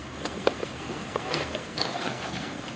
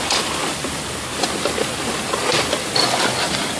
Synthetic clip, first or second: first